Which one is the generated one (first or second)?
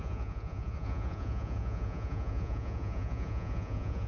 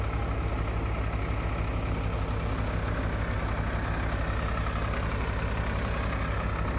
first